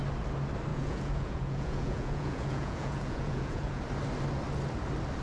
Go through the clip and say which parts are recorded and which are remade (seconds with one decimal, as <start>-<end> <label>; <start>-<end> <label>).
0.0-0.7 recorded; 0.7-3.8 remade; 3.8-5.2 recorded